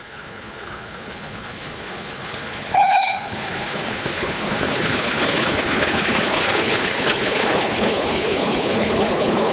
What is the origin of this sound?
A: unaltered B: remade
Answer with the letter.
B